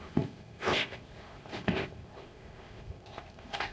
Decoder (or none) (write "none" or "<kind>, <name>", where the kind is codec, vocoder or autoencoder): codec, ZipCodec